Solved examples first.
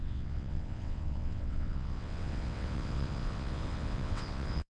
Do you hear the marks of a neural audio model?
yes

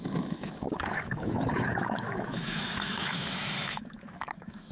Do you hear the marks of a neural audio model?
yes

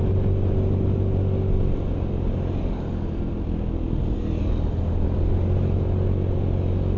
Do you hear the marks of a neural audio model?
no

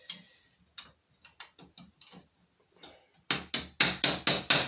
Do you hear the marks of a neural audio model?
no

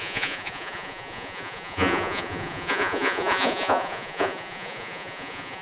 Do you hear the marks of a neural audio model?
yes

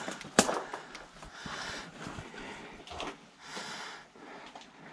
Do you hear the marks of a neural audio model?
no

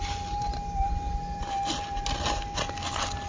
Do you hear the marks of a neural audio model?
no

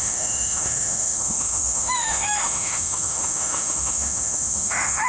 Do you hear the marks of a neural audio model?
yes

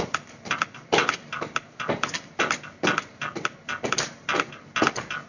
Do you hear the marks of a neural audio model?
no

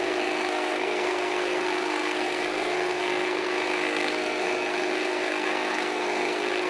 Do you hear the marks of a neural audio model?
yes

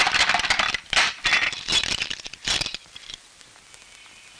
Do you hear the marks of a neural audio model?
no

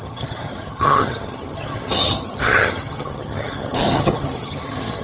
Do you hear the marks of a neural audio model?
yes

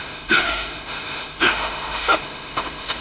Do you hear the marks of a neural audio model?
yes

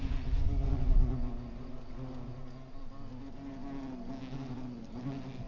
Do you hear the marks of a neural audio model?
no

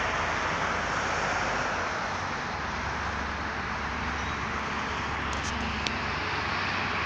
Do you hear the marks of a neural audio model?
no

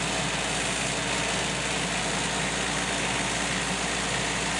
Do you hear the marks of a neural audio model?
no